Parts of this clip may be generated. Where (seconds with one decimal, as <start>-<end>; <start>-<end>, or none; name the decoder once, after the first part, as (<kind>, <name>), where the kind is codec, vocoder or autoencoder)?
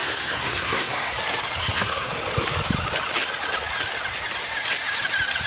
0.0-1.1 (codec, SNAC); 1.6-2.1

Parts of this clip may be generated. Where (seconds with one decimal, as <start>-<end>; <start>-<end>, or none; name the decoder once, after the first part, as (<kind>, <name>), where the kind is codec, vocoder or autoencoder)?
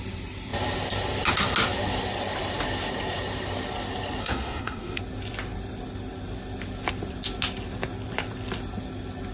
4.2-5.0 (codec, SNAC)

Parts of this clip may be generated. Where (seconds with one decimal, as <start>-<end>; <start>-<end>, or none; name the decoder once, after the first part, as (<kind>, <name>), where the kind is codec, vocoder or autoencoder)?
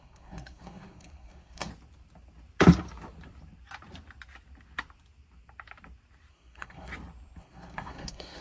0.0-1.7 (codec, SNAC); 6.3-6.9; 7.4-8.4